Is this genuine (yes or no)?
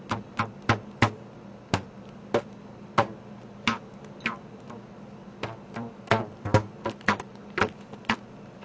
yes